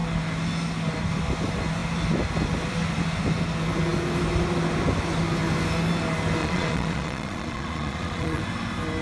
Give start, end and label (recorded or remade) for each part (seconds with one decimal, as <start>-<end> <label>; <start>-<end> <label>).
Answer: 0.0-6.4 recorded; 6.4-8.4 remade; 8.4-9.0 recorded